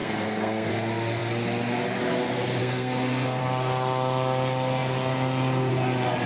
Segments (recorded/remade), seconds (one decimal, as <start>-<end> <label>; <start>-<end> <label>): 0.0-0.7 remade; 0.7-2.6 recorded; 2.6-3.4 remade; 3.4-6.3 recorded